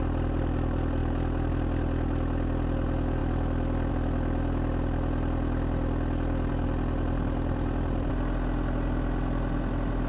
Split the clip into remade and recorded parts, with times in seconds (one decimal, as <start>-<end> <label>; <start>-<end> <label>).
0.0-10.1 recorded